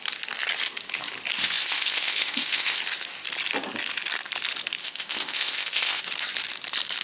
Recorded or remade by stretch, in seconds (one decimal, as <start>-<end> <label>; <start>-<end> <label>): 0.0-1.4 recorded; 1.4-2.8 remade; 2.8-4.8 recorded; 4.8-6.0 remade; 6.0-7.0 recorded